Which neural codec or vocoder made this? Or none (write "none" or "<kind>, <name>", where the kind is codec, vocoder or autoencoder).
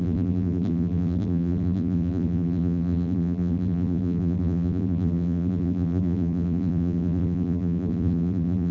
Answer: vocoder, BigVGAN v2